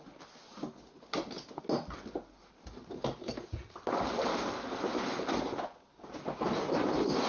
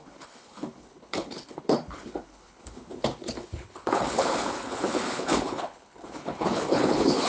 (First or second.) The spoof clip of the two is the second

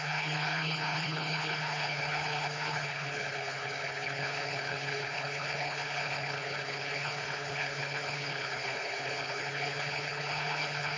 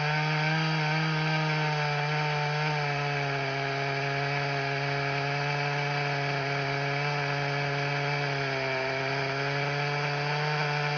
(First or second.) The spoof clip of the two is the first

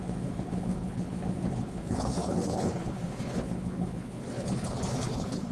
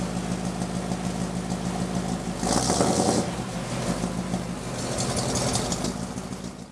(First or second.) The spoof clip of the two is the first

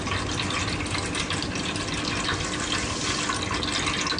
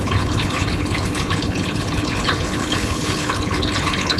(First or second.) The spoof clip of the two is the second